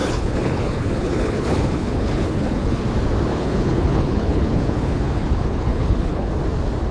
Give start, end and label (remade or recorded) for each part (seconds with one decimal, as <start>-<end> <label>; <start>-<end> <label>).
0.0-2.8 remade; 2.8-3.3 recorded; 3.3-6.3 remade; 6.3-6.9 recorded

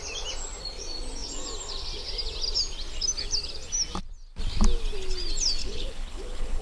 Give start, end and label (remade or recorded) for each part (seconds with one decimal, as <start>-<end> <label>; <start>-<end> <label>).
0.0-5.6 recorded; 5.6-6.6 remade

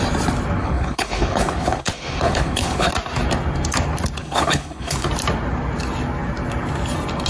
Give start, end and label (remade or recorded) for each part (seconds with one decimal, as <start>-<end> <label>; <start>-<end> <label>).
0.0-0.6 recorded; 0.6-2.9 remade; 2.9-4.2 recorded; 4.2-5.1 remade; 5.1-7.3 recorded

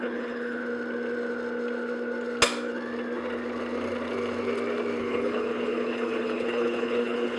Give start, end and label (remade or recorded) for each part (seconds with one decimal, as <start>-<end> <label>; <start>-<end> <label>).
0.0-0.6 remade; 0.6-5.0 recorded; 5.0-7.4 remade

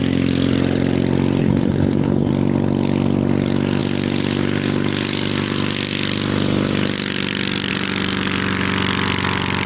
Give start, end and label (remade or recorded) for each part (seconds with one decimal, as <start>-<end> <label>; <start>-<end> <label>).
0.0-1.4 recorded; 1.4-2.3 remade; 2.3-9.7 recorded